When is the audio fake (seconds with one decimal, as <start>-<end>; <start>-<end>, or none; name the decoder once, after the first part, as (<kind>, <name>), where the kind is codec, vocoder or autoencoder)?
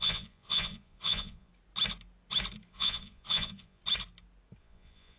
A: 0.0-1.5 (vocoder, Vocos); 2.7-3.8; 4.6-5.2